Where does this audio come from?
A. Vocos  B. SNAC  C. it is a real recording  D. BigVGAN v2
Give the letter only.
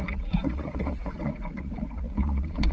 A